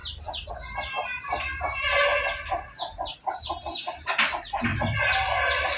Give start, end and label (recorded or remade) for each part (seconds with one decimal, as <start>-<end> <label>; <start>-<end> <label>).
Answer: 0.0-0.5 remade; 0.5-1.1 recorded; 1.1-2.2 remade; 2.2-3.1 recorded; 3.1-4.2 remade; 4.2-4.7 recorded; 4.7-5.8 remade

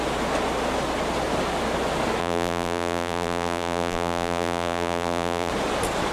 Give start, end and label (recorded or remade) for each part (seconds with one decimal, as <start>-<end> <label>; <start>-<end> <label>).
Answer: 0.0-2.2 recorded; 2.2-5.5 remade; 5.5-6.1 recorded

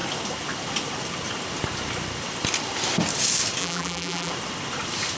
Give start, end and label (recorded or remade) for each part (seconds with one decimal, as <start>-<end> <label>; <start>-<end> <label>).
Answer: 0.0-3.6 recorded; 3.6-4.3 remade; 4.3-5.2 recorded